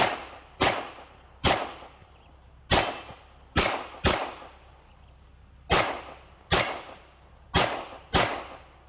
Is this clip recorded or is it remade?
recorded